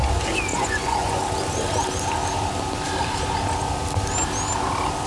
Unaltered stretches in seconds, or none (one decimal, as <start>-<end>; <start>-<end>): 0.0-0.5; 1.2-5.1